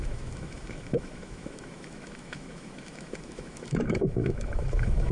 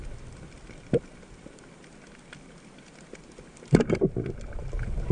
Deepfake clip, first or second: first